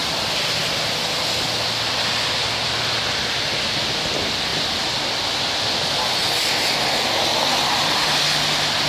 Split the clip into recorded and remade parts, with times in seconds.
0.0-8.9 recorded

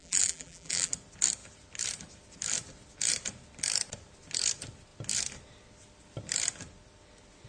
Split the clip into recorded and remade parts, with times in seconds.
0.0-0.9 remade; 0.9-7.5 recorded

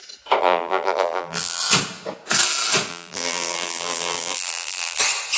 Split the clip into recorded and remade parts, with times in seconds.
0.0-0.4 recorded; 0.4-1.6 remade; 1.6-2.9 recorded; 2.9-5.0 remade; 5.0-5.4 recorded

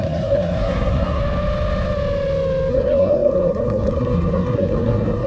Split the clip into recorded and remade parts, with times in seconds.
0.0-1.2 remade; 1.2-2.7 recorded; 2.7-5.3 remade

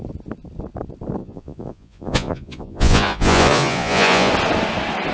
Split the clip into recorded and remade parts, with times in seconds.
0.0-1.2 recorded; 1.2-4.3 remade; 4.3-5.1 recorded

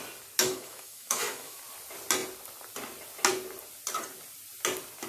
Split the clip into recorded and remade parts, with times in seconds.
0.0-0.4 recorded; 0.4-1.6 remade; 1.6-5.1 recorded

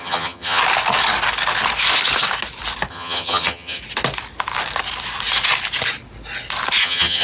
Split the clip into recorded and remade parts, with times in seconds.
0.0-0.6 remade; 0.6-2.9 recorded; 2.9-3.8 remade; 3.8-6.8 recorded; 6.8-7.2 remade